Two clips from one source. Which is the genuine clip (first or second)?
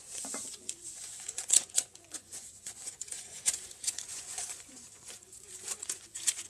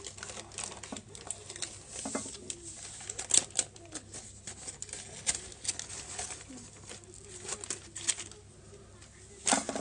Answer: second